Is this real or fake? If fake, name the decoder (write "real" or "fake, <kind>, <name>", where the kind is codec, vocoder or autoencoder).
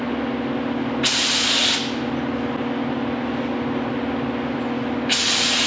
real